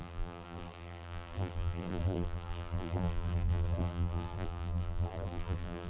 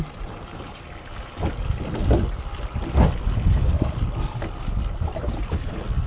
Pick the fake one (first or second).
first